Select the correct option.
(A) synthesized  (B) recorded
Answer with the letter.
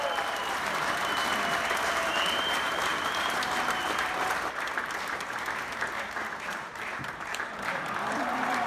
A